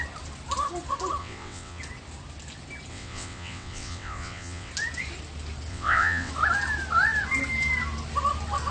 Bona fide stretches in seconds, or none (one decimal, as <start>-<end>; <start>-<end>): 0.0-1.2; 1.8-2.9; 4.7-5.7; 6.3-8.7